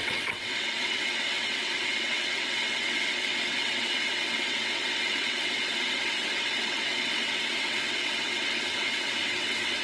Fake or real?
fake